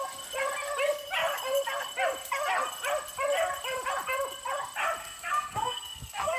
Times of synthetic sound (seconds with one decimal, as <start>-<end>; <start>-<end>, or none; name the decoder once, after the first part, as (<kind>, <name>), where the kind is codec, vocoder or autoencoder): 5.0-6.4 (codec, SNAC)